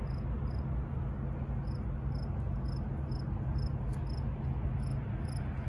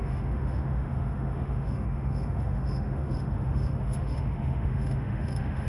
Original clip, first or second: first